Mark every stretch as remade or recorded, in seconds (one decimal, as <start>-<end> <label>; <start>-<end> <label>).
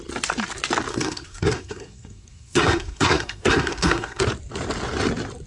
0.0-0.9 recorded; 0.9-4.2 remade; 4.2-5.5 recorded